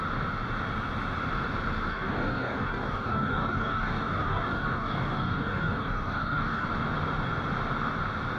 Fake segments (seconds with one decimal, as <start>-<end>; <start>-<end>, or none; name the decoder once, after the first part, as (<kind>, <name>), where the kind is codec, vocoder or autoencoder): 1.9-6.7 (codec, DAC)